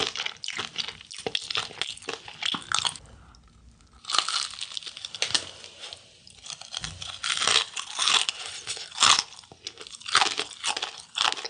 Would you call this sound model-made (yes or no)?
no